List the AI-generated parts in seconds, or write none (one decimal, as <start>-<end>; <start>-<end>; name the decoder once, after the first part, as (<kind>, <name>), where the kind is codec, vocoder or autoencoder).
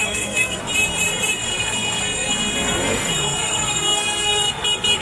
0.0-0.6 (codec, SNAC); 1.5-4.5